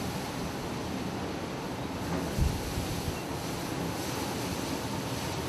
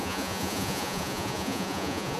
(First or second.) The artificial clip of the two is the second